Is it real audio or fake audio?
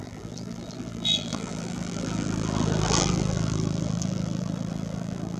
fake